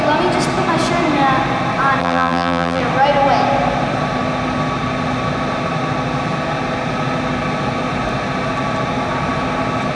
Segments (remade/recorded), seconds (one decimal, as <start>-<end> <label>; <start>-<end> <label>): 0.0-2.0 recorded; 2.0-2.8 remade; 2.8-10.0 recorded